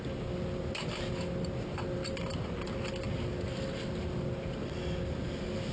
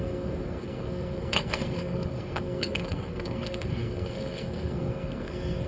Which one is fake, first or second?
second